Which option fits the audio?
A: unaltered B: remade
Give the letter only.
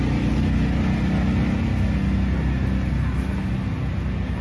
A